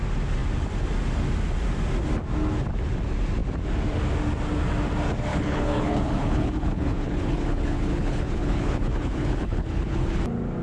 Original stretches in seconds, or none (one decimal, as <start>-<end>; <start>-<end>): 0.0-5.3; 10.2-10.6